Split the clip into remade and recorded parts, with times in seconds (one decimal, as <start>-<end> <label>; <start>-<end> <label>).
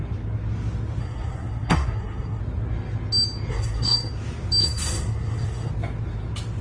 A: 0.0-1.0 recorded; 1.0-2.4 remade; 2.4-3.5 recorded; 3.5-4.1 remade; 4.1-4.6 recorded; 4.6-5.7 remade; 5.7-6.6 recorded